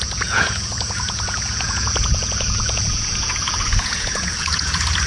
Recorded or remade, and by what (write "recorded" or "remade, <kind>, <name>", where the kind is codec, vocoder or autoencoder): remade, vocoder, Vocos